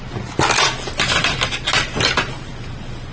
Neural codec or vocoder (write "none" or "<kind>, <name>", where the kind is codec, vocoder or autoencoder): none